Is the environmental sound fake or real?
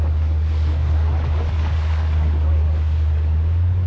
fake